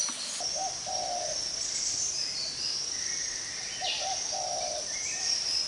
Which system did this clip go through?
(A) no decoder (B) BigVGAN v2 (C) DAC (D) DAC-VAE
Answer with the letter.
A